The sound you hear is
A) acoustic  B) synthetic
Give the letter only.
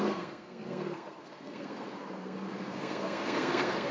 B